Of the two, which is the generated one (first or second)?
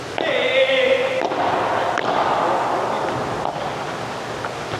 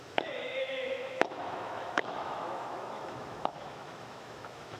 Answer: second